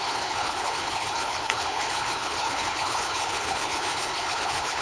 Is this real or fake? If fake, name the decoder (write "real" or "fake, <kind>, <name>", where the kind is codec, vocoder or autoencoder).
fake, codec, HILCodec